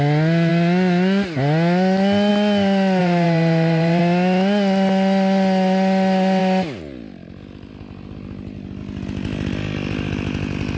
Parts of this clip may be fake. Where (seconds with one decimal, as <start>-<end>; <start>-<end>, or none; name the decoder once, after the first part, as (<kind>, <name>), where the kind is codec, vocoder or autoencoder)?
3.0-4.0 (vocoder, BigVGAN v2)